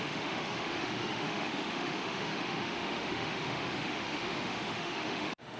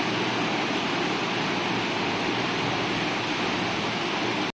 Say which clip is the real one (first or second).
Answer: second